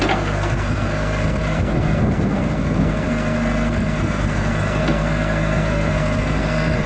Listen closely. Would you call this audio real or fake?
fake